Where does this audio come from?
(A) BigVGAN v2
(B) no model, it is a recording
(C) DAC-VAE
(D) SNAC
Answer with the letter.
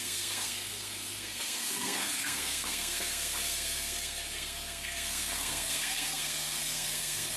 D